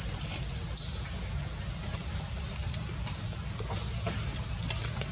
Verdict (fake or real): real